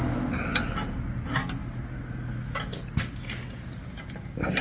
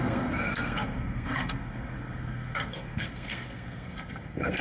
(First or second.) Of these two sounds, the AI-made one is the second